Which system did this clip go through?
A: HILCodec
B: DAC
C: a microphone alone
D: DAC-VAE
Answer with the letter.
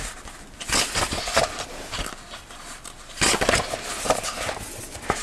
C